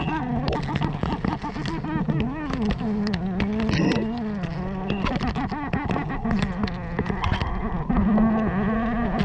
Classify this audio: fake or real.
real